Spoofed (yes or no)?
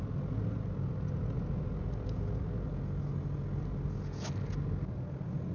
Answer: no